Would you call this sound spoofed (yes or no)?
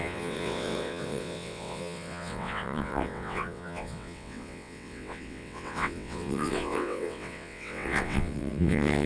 yes